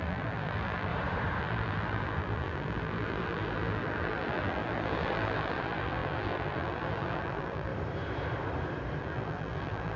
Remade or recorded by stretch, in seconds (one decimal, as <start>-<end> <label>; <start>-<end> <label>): 0.0-0.9 remade; 0.9-1.4 recorded; 1.4-7.7 remade; 7.7-9.0 recorded; 9.0-10.0 remade